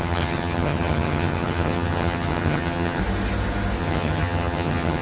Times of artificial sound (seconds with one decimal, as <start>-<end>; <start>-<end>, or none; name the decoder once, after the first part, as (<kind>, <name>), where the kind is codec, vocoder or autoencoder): 0.0-3.0 (vocoder, HiFi-GAN); 3.8-5.0